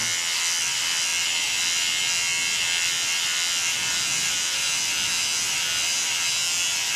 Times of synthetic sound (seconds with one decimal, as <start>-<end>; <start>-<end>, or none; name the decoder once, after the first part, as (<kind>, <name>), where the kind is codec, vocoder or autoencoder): 0.6-7.0 (vocoder, BigVGAN v2)